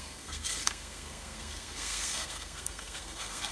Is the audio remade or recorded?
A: remade